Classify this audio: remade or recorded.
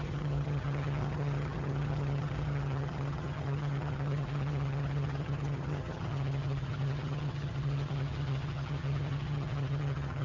remade